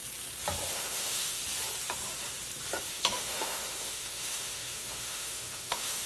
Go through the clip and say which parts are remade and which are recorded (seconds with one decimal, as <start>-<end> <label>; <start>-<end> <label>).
0.0-0.7 recorded; 0.7-1.4 remade; 1.4-2.9 recorded; 2.9-6.1 remade